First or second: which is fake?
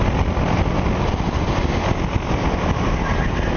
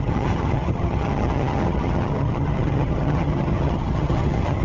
second